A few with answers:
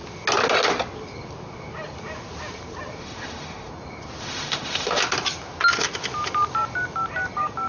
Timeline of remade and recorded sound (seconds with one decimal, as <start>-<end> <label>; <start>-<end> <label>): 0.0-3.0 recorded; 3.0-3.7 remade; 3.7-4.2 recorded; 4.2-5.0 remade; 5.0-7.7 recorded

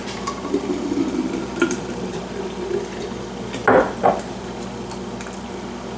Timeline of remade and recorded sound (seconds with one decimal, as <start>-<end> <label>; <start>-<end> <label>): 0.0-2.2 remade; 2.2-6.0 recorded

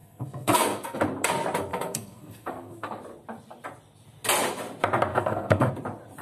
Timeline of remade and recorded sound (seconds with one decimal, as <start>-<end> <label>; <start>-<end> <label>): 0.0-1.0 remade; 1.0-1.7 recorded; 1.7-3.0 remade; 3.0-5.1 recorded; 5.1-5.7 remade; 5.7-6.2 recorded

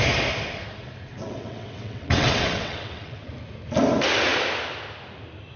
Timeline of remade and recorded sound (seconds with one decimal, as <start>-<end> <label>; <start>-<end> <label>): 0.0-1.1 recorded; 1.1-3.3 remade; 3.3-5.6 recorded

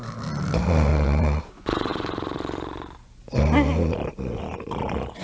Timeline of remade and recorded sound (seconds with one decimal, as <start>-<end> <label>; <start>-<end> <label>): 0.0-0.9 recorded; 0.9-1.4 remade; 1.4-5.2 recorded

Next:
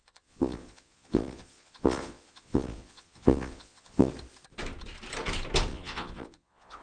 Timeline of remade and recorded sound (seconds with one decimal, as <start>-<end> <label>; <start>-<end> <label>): 0.0-4.1 remade; 4.1-5.7 recorded; 5.7-6.8 remade